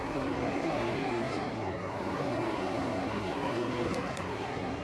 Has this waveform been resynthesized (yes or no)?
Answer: yes